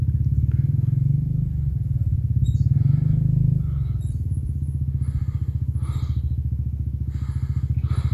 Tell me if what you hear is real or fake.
real